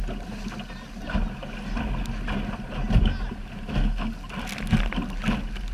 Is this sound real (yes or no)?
yes